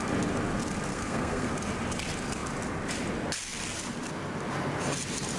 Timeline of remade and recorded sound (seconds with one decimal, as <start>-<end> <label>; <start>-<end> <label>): 0.0-0.9 recorded; 0.9-1.5 remade; 1.5-5.4 recorded